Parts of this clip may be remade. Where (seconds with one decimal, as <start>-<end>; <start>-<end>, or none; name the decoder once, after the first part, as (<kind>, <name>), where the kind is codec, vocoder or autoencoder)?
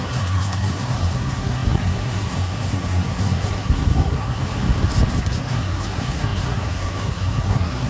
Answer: 0.0-4.4 (codec, SNAC); 5.1-7.9